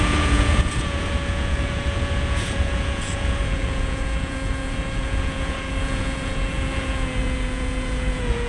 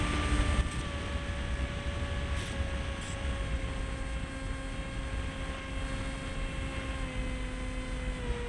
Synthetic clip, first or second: first